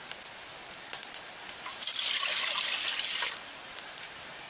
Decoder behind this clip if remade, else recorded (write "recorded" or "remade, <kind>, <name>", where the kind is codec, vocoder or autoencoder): recorded